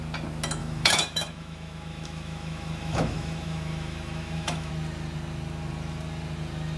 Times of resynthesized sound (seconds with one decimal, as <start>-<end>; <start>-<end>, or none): 0.6-4.7